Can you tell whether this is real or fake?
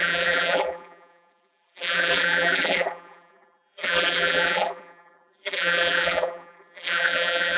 fake